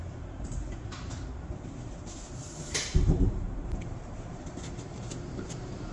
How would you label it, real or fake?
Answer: fake